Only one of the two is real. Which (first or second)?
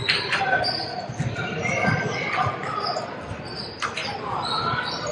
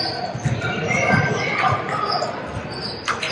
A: second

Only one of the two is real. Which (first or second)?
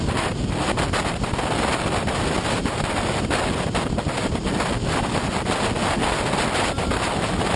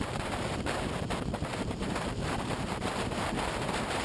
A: first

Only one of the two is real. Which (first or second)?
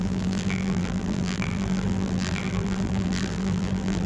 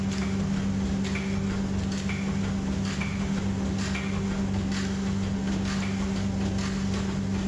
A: second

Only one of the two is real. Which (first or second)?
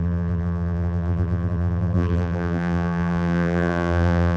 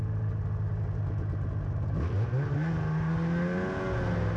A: second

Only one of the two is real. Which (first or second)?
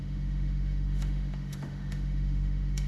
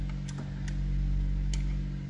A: second